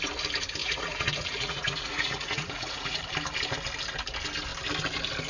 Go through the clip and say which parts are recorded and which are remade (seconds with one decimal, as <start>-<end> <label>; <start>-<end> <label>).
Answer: 0.0-0.6 recorded; 0.6-3.0 remade; 3.0-5.3 recorded